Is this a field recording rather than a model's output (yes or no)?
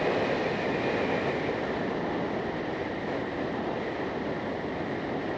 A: yes